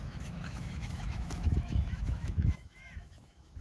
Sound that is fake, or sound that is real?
fake